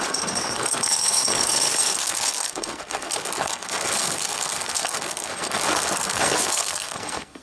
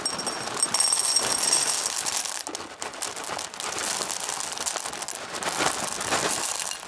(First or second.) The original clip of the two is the second